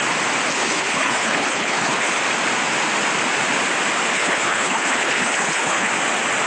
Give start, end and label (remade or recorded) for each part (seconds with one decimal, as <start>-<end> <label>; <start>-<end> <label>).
0.0-0.5 recorded; 0.5-2.2 remade; 2.2-4.1 recorded; 4.1-5.9 remade; 5.9-6.5 recorded